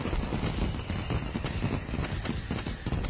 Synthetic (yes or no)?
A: no